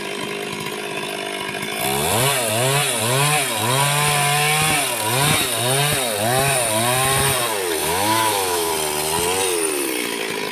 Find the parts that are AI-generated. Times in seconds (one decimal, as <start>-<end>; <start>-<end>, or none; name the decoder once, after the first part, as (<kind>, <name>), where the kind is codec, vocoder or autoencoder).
7.8-8.7 (autoencoder, DAC-VAE)